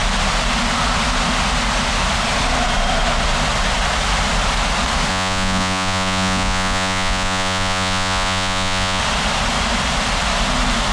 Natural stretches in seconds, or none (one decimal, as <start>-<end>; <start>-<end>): 0.0-5.1; 9.0-10.9